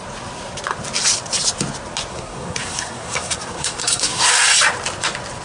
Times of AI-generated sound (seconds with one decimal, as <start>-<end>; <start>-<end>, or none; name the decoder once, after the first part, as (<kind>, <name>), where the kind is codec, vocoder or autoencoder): 2.1-4.3 (codec, SNAC)